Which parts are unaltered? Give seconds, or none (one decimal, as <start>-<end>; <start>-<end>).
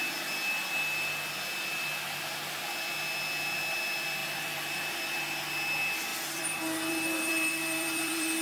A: 0.0-4.2; 5.1-6.1